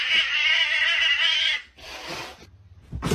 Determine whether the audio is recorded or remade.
recorded